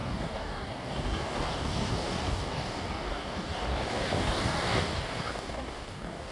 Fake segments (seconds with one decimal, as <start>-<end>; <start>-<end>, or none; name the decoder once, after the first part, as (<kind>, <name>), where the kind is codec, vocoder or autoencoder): 0.0-6.3 (codec, DAC)